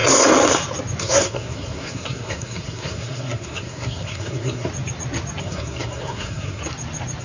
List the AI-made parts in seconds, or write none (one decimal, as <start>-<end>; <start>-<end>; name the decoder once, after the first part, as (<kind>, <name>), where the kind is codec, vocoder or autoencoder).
1.0-4.7 (codec, SNAC); 5.4-6.6